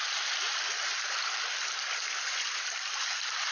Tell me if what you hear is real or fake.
real